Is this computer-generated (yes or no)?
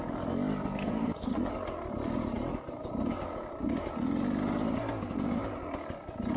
no